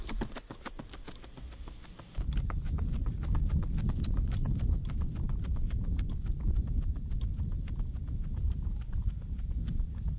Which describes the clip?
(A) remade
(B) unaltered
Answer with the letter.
B